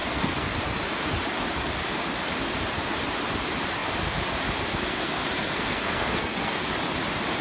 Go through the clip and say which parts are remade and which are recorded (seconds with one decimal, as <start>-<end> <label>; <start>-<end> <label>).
0.0-0.6 remade; 0.6-4.7 recorded; 4.7-6.7 remade; 6.7-7.4 recorded